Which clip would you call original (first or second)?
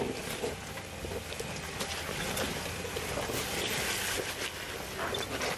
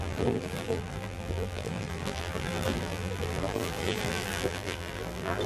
first